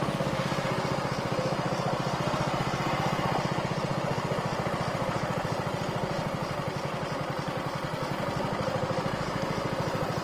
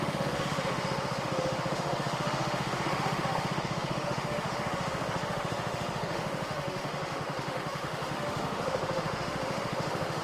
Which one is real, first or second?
first